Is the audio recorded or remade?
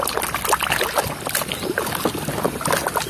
recorded